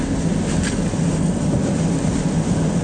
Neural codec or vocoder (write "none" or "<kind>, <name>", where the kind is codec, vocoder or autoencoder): none